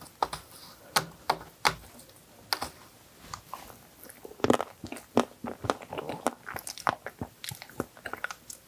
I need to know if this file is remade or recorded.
recorded